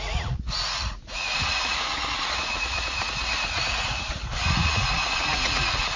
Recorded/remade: remade